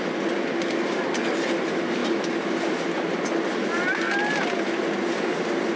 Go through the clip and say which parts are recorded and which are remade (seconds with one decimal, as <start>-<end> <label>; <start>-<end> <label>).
0.0-5.8 recorded